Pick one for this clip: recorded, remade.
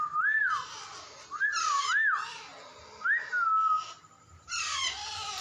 recorded